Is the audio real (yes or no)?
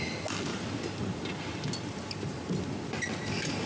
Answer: yes